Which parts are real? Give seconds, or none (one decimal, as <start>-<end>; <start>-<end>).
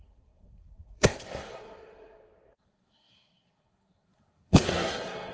none